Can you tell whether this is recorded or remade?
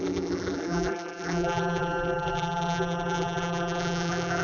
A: remade